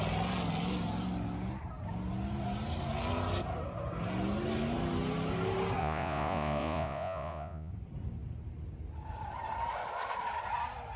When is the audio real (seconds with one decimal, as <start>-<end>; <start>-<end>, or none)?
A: 0.0-5.8; 7.7-11.0